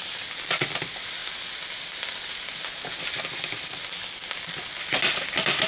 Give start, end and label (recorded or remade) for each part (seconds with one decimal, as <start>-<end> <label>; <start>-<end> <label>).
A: 0.0-5.7 recorded